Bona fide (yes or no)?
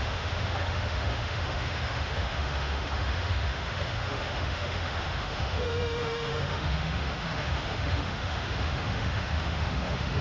no